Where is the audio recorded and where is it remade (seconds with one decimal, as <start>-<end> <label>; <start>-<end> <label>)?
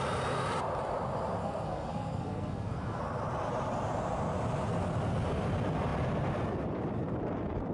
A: 0.0-1.4 recorded; 1.4-3.0 remade; 3.0-7.7 recorded